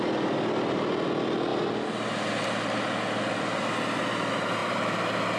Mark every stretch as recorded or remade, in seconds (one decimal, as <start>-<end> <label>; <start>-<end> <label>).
0.0-5.4 recorded